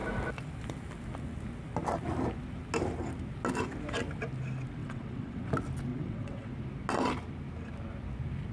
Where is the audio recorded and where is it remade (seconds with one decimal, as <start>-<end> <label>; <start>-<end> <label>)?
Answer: 0.0-4.8 recorded; 4.8-5.5 remade; 5.5-5.9 recorded; 5.9-6.5 remade; 6.5-8.5 recorded